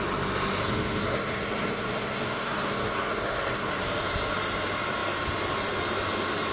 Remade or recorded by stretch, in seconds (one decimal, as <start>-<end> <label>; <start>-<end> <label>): 0.0-0.6 recorded; 0.6-3.7 remade; 3.7-6.5 recorded